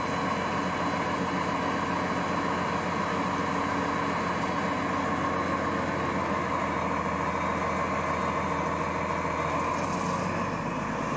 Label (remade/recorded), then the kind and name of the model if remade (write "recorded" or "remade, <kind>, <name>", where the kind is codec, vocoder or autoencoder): recorded